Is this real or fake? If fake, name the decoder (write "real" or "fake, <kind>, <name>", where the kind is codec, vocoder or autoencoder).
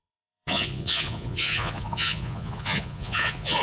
fake, vocoder, Vocos